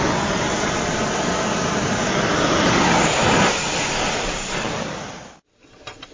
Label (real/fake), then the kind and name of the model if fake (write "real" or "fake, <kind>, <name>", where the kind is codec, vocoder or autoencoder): real